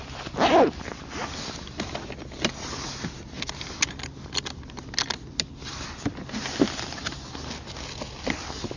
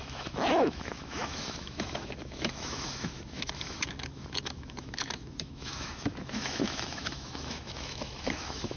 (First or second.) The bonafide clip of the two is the first